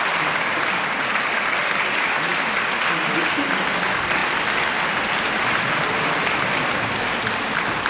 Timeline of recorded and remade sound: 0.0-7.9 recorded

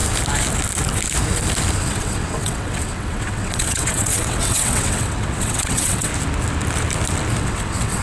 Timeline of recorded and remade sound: 0.0-1.8 recorded; 1.8-6.1 remade; 6.1-7.4 recorded; 7.4-8.0 remade

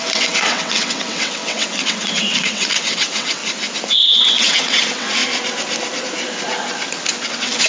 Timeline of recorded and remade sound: 0.0-3.4 remade; 3.4-4.1 recorded; 4.1-5.2 remade; 5.2-7.3 recorded; 7.3-7.7 remade

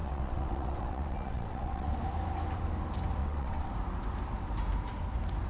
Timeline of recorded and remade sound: 0.0-2.0 remade; 2.0-3.2 recorded; 3.2-3.7 remade; 3.7-5.5 recorded

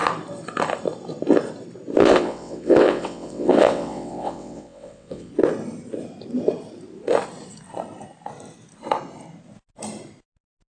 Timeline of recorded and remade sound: 0.0-2.0 recorded; 2.0-5.3 remade; 5.3-10.7 recorded